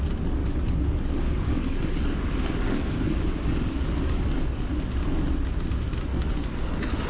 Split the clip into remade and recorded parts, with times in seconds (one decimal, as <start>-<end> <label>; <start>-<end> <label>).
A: 0.0-0.4 recorded; 0.4-4.7 remade; 4.7-6.1 recorded; 6.1-7.1 remade